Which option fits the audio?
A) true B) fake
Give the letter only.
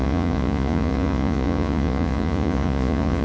B